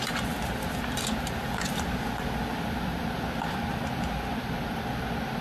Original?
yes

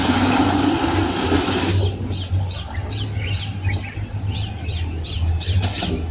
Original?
yes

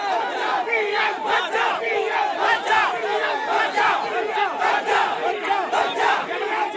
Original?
yes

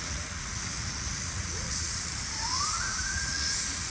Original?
no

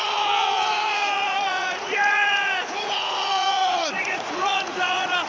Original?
no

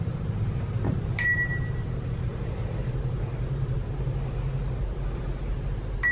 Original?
yes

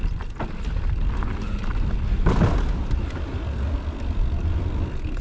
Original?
yes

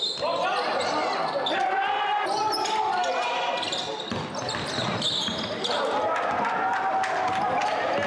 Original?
yes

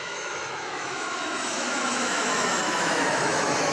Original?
no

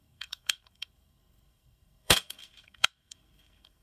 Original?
no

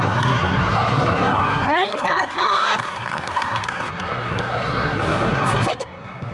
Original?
no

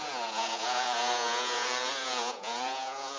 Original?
no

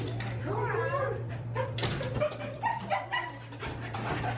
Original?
no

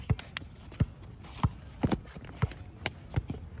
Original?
yes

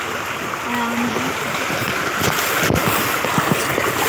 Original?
yes